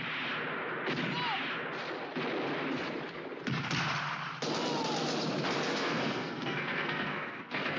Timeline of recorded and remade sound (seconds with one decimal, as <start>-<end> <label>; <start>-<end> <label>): 0.0-5.7 recorded; 5.7-7.8 remade